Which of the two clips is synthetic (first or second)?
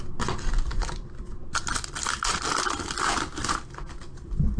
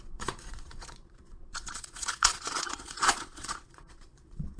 second